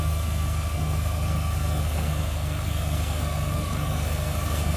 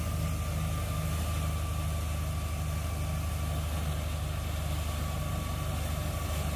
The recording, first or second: second